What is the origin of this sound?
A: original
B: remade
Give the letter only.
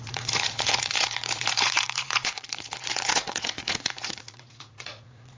B